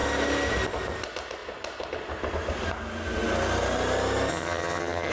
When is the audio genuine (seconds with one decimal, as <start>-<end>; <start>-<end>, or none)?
0.0-4.3